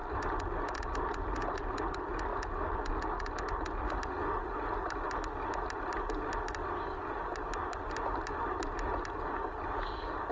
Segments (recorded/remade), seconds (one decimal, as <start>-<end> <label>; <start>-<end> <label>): 0.0-10.3 recorded